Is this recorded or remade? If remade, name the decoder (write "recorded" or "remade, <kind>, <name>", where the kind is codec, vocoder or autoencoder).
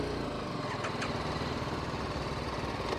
recorded